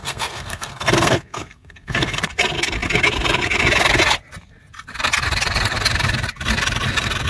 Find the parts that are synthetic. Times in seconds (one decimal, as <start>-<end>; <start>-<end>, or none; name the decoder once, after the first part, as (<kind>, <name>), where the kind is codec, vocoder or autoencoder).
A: 0.0-2.2 (codec, SNAC)